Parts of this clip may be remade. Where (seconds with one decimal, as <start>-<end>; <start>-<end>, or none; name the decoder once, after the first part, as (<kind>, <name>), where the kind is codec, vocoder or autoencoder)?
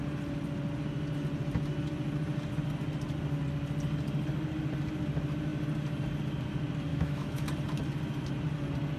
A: 6.9-7.5 (autoencoder, DAC-VAE)